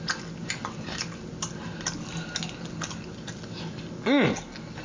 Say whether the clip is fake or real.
real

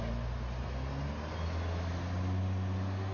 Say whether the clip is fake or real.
real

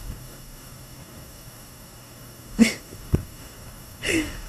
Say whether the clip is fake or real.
fake